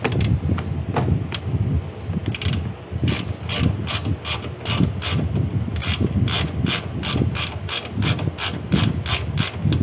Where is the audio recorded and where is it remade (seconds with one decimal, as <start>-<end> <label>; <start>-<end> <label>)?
0.0-9.8 recorded